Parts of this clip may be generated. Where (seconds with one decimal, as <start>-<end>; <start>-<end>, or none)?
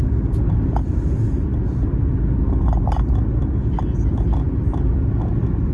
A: none